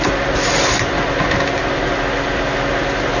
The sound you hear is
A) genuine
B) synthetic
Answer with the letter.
A